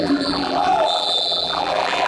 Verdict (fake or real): fake